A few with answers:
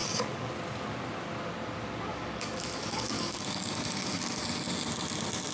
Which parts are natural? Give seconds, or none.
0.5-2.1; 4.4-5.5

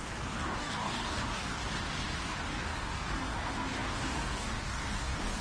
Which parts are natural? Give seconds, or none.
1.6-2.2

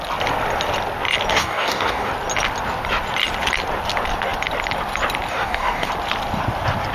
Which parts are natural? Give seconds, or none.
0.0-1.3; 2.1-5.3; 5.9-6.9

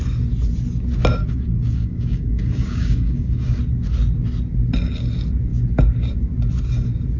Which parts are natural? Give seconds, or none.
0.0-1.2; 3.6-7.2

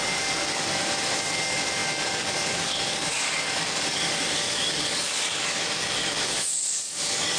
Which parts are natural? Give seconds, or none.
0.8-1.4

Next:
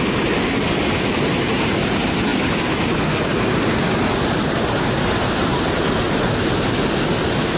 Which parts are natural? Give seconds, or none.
0.0-7.6

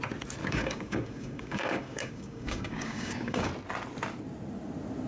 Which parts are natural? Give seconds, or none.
0.0-0.4; 3.5-5.1